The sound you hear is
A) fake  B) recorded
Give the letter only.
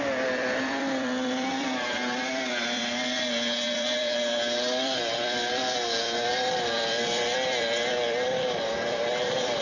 A